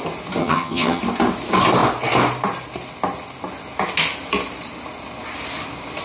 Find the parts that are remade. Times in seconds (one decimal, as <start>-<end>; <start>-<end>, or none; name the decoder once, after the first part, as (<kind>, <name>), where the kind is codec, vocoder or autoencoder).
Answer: 0.4-1.0 (vocoder, HiFi-GAN)